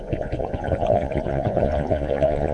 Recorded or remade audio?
remade